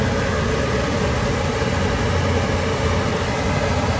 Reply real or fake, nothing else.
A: real